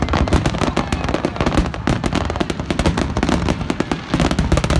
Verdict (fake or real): real